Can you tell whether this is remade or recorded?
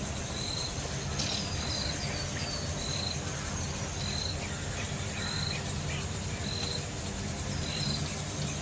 recorded